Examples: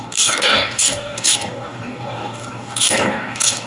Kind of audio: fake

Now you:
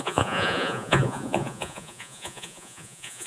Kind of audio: fake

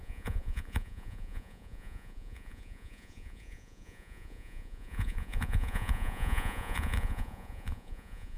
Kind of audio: fake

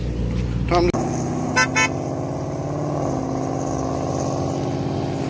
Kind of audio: real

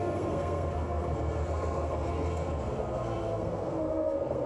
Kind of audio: fake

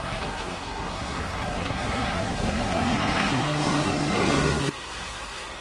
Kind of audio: fake